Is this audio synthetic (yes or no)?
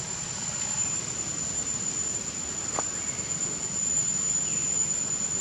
no